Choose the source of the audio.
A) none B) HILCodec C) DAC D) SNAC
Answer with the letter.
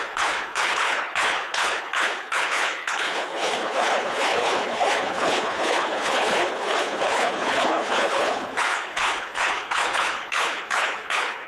B